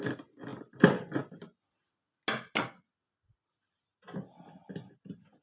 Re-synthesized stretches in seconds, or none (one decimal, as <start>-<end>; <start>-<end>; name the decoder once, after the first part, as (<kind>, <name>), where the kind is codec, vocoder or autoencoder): 0.5-1.3 (vocoder, BigVGAN v2)